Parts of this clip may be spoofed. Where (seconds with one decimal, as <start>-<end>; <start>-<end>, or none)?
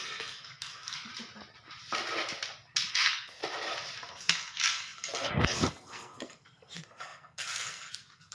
0.0-1.1; 2.9-3.4; 4.1-8.3